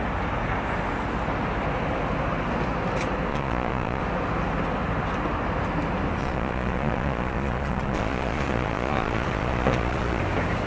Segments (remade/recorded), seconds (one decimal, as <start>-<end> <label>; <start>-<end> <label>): 0.0-3.3 recorded; 3.3-4.0 remade; 4.0-6.2 recorded; 6.2-10.2 remade; 10.2-10.7 recorded